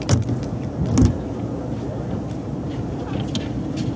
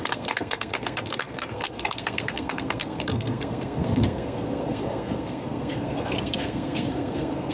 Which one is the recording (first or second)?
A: first